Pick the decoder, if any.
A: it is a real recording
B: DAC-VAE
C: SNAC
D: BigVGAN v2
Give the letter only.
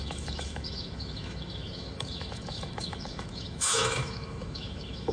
B